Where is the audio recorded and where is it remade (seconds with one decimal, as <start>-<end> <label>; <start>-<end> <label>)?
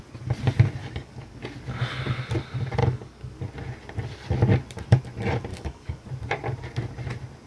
0.0-0.8 recorded; 0.8-1.4 remade; 1.4-2.8 recorded; 2.8-3.4 remade; 3.4-5.5 recorded; 5.5-6.1 remade; 6.1-7.5 recorded